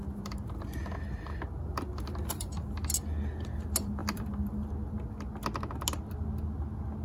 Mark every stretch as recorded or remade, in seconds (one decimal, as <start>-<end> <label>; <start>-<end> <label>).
0.0-4.0 recorded; 4.0-4.7 remade; 4.7-7.0 recorded